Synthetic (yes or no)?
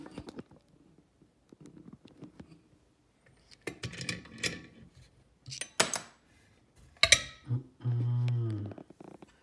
no